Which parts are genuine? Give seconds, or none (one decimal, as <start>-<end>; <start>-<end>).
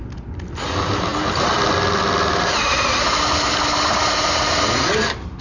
0.0-5.4